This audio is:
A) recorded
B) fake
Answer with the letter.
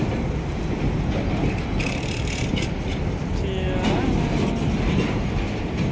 A